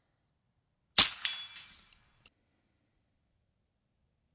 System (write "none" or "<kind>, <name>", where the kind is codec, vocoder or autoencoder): none